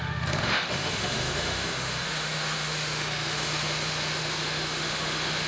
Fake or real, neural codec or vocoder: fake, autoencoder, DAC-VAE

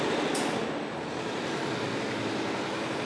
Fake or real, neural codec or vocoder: real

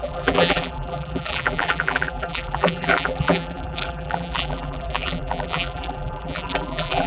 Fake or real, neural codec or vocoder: fake, vocoder, BigVGAN v2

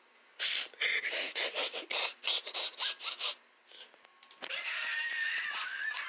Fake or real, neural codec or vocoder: real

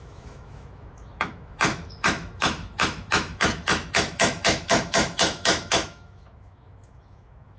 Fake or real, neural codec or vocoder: fake, autoencoder, DAC-VAE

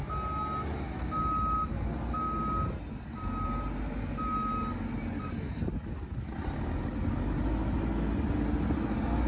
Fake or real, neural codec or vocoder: real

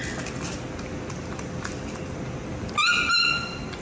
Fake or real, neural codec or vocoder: real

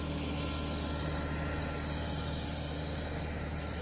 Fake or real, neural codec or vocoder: real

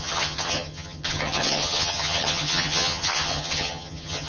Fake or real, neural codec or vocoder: fake, vocoder, HiFi-GAN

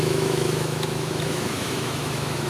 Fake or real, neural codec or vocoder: fake, autoencoder, DAC-VAE